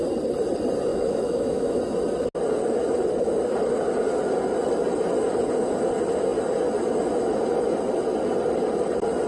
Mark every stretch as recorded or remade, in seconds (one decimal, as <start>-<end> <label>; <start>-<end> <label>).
0.0-0.9 recorded; 0.9-1.8 remade; 1.8-9.3 recorded